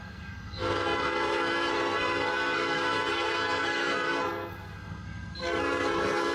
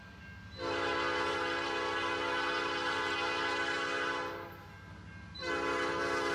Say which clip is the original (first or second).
second